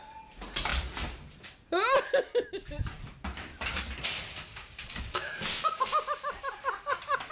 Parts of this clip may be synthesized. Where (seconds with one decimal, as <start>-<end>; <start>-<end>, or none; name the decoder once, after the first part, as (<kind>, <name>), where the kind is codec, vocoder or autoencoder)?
4.5-6.0 (codec, DAC)

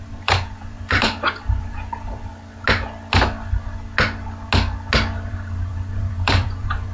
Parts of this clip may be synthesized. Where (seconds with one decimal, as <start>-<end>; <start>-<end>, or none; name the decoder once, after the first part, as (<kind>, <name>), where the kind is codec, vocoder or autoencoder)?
0.0-2.3 (vocoder, BigVGAN v2); 5.3-6.9

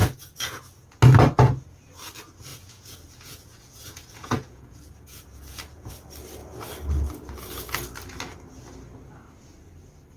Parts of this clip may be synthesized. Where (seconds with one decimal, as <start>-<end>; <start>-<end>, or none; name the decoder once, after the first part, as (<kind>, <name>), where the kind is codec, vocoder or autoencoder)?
0.0-1.0 (vocoder, Vocos); 2.5-5.9

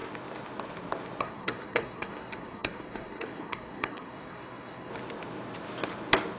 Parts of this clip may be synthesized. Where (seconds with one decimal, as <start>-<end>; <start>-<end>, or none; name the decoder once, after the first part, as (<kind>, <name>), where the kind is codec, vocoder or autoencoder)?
1.2-4.9 (codec, SNAC)

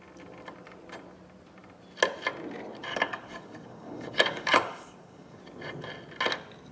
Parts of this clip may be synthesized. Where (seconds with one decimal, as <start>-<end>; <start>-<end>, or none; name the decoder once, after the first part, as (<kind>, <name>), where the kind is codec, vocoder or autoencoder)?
2.9-5.4 (codec, DAC)